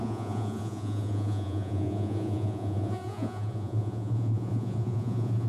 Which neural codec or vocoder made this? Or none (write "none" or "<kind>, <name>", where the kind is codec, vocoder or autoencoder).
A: vocoder, Vocos